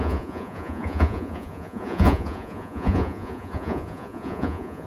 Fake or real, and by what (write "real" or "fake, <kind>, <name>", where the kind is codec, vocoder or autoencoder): fake, vocoder, Vocos